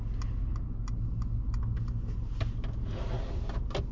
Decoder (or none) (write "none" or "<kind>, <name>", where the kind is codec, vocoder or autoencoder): none